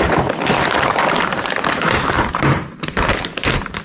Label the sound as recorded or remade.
remade